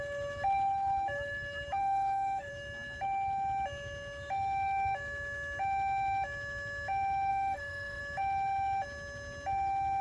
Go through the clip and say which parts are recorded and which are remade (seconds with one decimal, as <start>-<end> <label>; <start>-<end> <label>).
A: 0.0-1.8 recorded; 1.8-2.5 remade; 2.5-7.3 recorded; 7.3-8.0 remade; 8.0-10.0 recorded